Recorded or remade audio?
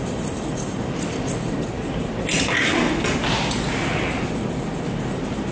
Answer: recorded